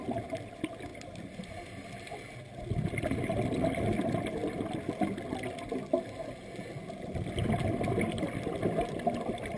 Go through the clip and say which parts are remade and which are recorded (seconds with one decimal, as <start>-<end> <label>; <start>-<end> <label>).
0.0-0.9 recorded; 0.9-2.4 remade; 2.4-9.6 recorded